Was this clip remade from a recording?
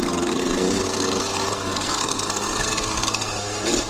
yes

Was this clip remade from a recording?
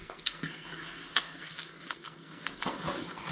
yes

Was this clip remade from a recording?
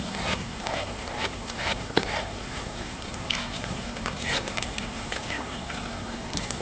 yes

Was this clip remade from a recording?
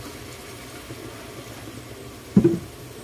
no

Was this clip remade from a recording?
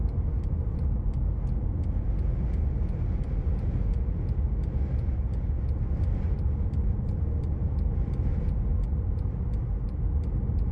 no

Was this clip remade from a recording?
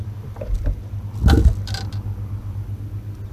no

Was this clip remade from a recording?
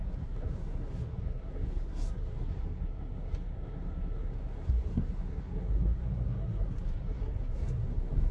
yes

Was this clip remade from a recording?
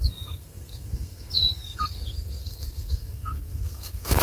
yes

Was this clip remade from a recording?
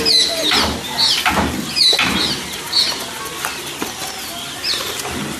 no